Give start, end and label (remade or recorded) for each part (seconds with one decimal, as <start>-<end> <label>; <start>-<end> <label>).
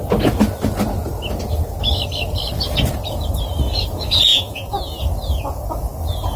0.0-4.3 recorded; 4.3-5.0 remade; 5.0-6.4 recorded